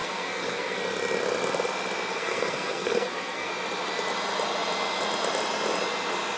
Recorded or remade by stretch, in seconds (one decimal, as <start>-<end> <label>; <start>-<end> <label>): 0.0-0.8 remade; 0.8-2.1 recorded; 2.1-3.5 remade; 3.5-6.4 recorded